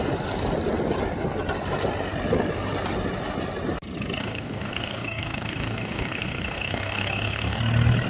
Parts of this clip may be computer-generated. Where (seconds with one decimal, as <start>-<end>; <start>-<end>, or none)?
4.2-7.6